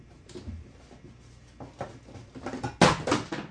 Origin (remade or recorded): recorded